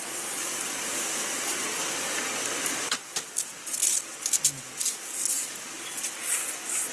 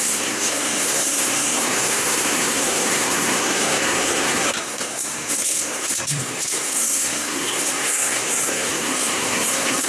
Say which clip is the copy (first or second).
second